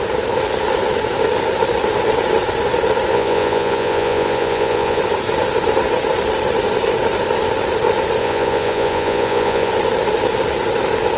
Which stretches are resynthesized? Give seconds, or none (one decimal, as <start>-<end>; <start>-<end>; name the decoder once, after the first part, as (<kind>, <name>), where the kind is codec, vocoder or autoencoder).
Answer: 3.1-5.0 (vocoder, Vocos); 8.2-9.7